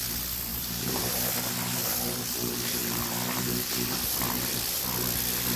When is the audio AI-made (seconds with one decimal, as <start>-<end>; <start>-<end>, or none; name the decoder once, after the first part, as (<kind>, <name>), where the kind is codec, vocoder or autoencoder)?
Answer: 0.5-1.2 (vocoder, BigVGAN v2)